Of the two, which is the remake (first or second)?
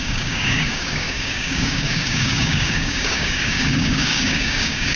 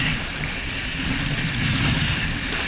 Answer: first